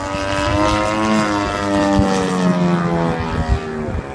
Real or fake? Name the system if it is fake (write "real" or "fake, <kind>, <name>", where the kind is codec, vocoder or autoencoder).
real